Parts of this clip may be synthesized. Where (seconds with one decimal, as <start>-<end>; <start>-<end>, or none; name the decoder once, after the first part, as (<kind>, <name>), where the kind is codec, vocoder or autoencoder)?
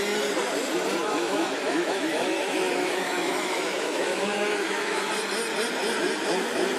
1.0-5.1 (autoencoder, DAC-VAE)